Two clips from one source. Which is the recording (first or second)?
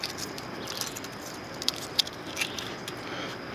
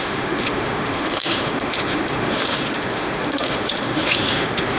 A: first